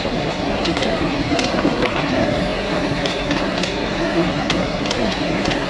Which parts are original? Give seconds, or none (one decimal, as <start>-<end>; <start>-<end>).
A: none